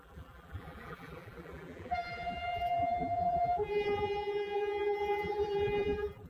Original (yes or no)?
no